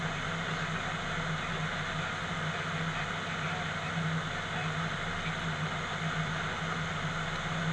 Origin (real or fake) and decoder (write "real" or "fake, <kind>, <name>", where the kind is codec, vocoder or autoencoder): real